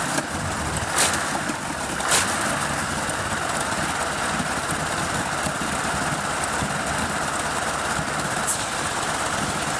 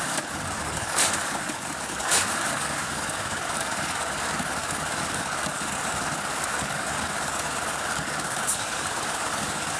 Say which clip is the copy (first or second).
second